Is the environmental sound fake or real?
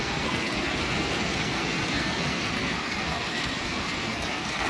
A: fake